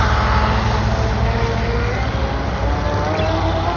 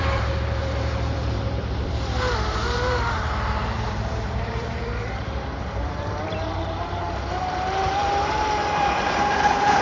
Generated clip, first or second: second